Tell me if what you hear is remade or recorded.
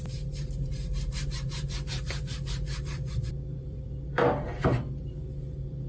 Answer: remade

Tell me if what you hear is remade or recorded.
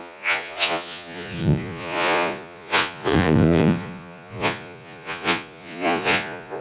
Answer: remade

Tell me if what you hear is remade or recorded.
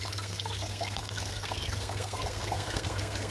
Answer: remade